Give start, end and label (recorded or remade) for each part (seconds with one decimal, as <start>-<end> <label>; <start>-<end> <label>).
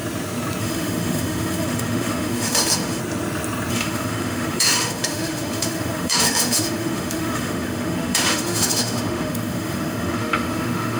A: 0.0-0.6 recorded; 0.6-3.0 remade; 3.0-3.7 recorded; 3.7-11.0 remade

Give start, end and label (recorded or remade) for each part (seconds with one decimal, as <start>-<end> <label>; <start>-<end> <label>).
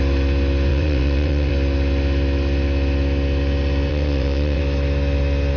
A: 0.0-0.7 recorded; 0.7-1.5 remade; 1.5-3.9 recorded; 3.9-4.6 remade; 4.6-5.6 recorded